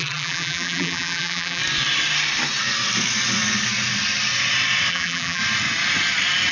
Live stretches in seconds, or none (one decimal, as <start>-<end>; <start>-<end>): 1.6-4.9; 5.4-6.5